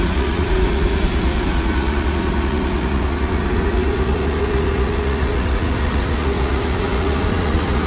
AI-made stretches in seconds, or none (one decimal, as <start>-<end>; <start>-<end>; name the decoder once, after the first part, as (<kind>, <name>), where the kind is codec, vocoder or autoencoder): 0.0-7.9 (vocoder, Vocos)